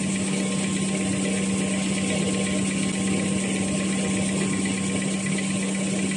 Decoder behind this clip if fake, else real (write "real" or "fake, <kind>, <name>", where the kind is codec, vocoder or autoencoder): real